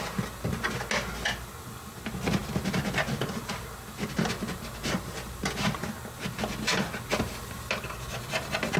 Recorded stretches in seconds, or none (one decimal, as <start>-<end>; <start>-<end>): 0.0-4.8; 5.7-7.1; 7.7-8.8